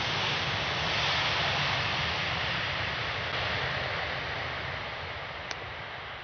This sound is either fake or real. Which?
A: real